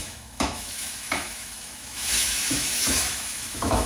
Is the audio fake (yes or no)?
yes